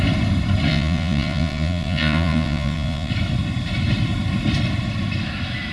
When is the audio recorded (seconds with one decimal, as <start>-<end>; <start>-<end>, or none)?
0.0-0.7; 3.1-5.7